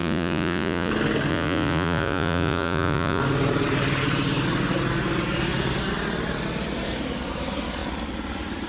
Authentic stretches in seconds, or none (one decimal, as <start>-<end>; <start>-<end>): 0.9-1.3; 3.2-8.7